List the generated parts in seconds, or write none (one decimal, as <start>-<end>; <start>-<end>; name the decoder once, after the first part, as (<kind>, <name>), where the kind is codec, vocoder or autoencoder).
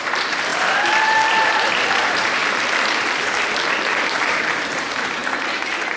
0.0-2.4 (vocoder, BigVGAN v2); 3.9-5.2